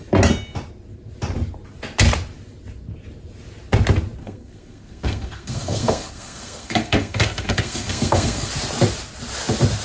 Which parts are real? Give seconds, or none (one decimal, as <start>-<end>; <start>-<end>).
0.0-4.2; 8.5-9.8